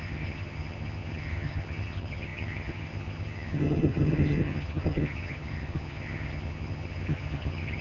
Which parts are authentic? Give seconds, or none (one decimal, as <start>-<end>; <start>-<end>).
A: none